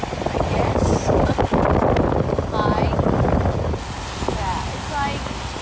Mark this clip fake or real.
real